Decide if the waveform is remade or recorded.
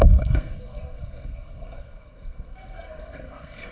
remade